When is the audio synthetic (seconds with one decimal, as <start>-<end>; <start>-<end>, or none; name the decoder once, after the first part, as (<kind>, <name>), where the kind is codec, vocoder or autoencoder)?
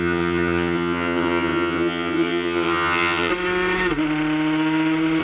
0.0-3.3 (vocoder, HiFi-GAN)